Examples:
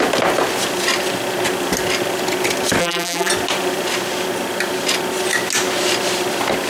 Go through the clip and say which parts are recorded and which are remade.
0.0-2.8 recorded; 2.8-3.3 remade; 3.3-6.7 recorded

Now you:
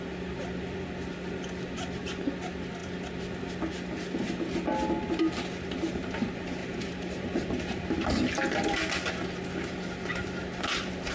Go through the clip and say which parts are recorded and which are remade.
0.0-6.6 recorded; 6.6-8.2 remade; 8.2-10.1 recorded; 10.1-11.1 remade

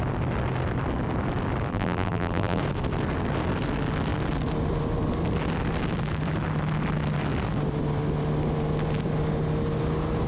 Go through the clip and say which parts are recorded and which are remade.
0.0-1.7 recorded; 1.7-2.6 remade; 2.6-10.3 recorded